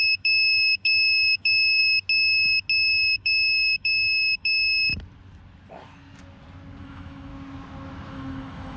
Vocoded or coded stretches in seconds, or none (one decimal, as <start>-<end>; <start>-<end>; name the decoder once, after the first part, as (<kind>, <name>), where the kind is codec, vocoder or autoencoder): 0.0-1.8 (autoencoder, DAC-VAE); 2.9-4.9; 6.8-7.3; 8.1-8.8